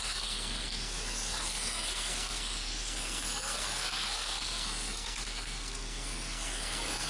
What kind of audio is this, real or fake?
fake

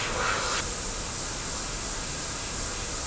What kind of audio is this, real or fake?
real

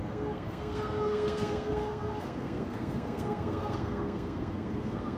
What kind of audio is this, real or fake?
fake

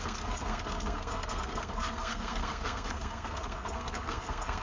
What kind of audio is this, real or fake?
fake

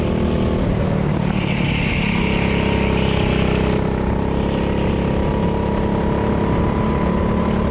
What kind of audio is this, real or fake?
real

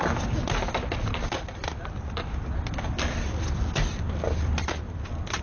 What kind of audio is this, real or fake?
real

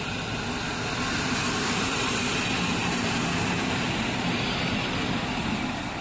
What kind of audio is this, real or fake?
real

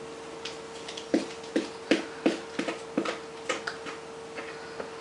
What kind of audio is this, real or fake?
real